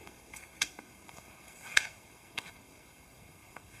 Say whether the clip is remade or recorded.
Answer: remade